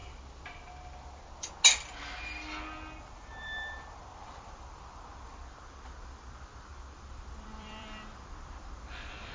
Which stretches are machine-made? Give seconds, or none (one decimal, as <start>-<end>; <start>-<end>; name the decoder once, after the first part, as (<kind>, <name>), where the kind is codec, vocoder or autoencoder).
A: 3.0-9.3 (vocoder, BigVGAN v2)